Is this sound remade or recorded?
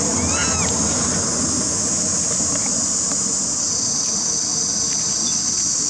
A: recorded